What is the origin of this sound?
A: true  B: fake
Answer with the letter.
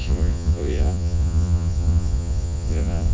B